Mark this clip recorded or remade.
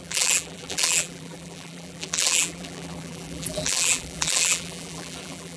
remade